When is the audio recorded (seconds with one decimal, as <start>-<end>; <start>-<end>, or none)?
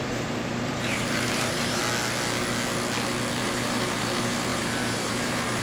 1.8-3.4